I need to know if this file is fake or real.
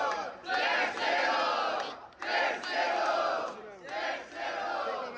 real